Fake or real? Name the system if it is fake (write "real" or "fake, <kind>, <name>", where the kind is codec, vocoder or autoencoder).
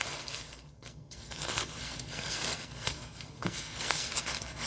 fake, codec, SNAC